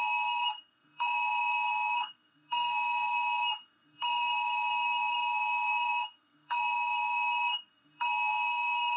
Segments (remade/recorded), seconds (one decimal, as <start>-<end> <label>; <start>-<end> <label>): 0.0-9.0 remade